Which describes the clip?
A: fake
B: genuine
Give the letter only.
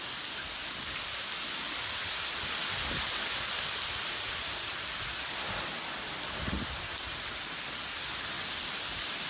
B